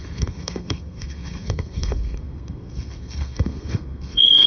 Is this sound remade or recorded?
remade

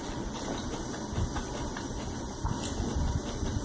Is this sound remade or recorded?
recorded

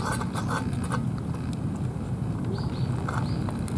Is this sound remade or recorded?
recorded